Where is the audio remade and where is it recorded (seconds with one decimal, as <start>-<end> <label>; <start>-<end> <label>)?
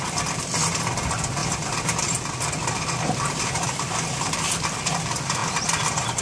0.0-6.2 remade